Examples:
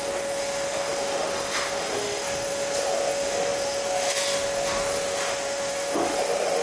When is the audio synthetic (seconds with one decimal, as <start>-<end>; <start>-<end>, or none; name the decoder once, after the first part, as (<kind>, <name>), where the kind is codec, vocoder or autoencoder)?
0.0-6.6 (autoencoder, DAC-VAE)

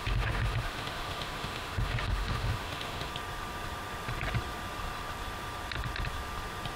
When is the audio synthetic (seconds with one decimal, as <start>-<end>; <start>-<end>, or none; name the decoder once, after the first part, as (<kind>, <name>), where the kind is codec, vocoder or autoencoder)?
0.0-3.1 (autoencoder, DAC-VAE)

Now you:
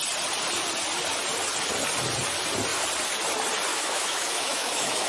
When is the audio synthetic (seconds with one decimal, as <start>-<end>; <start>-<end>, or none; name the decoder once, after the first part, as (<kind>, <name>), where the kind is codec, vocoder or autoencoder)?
3.7-5.1 (autoencoder, DAC-VAE)

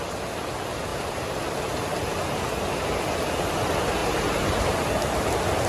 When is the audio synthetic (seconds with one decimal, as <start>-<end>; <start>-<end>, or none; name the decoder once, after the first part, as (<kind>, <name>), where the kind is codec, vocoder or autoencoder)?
none

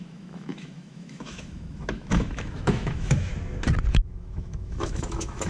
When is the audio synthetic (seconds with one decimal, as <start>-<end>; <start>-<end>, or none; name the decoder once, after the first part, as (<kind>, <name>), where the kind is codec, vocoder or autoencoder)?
0.0-3.3 (autoencoder, DAC-VAE); 3.9-5.5

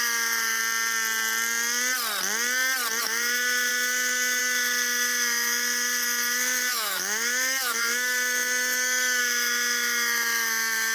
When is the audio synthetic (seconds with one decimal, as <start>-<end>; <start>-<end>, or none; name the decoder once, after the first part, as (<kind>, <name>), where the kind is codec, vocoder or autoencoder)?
0.0-0.6 (autoencoder, DAC-VAE); 3.0-10.9

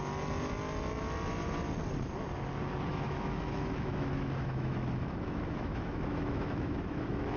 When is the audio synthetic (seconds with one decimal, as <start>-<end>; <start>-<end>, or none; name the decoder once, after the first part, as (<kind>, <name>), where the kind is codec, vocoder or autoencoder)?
2.9-7.4 (autoencoder, DAC-VAE)